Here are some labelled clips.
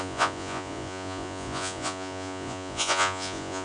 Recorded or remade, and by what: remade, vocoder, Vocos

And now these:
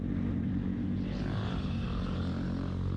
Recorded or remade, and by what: recorded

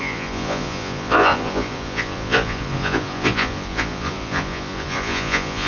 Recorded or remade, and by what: remade, vocoder, Vocos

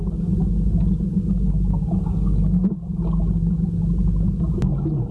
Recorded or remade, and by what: recorded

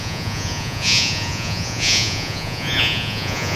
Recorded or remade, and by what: remade, vocoder, Vocos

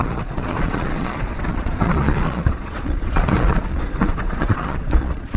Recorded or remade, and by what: remade, vocoder, Vocos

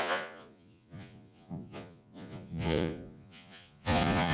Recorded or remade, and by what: remade, vocoder, Vocos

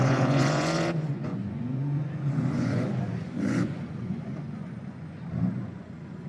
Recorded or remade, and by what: remade, vocoder, Vocos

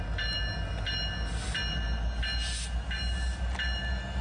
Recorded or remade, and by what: recorded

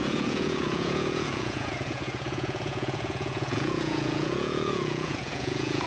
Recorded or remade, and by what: remade, vocoder, Vocos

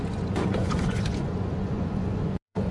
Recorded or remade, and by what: remade, vocoder, Vocos